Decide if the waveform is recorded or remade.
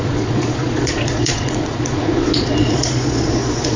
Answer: remade